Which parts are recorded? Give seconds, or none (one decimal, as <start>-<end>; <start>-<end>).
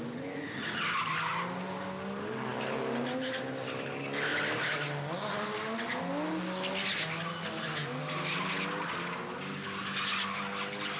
0.0-11.0